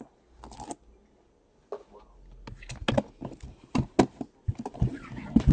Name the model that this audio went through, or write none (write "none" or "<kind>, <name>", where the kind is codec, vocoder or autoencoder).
none